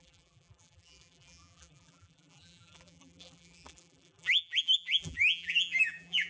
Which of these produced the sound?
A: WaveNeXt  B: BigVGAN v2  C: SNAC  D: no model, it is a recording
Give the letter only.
B